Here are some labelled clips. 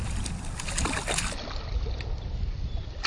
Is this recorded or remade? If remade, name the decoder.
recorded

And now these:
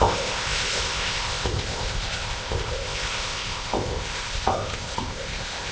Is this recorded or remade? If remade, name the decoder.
remade, codec, ZipCodec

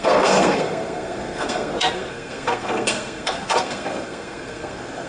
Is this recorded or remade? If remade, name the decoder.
remade, codec, SNAC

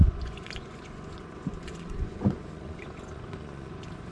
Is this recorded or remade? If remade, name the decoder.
remade, vocoder, Vocos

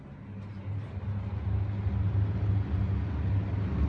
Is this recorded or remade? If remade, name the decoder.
recorded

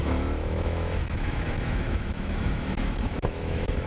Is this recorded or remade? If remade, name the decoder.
remade, autoencoder, DAC-VAE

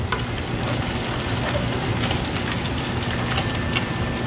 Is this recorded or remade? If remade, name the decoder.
recorded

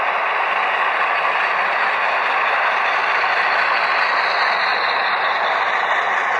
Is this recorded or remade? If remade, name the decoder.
recorded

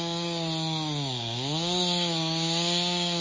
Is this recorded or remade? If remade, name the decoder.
remade, codec, DAC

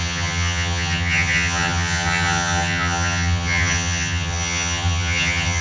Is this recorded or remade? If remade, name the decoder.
remade, vocoder, HiFi-GAN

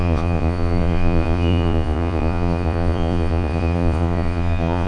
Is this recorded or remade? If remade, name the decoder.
remade, vocoder, Vocos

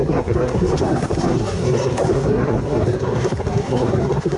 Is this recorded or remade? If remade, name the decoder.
remade, codec, SNAC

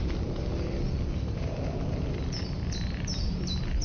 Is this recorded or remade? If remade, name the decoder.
recorded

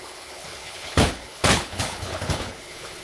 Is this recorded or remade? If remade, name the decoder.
remade, codec, HILCodec